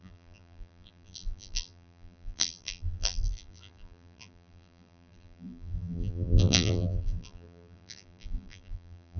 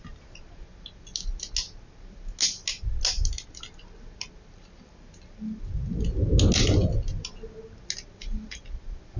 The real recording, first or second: second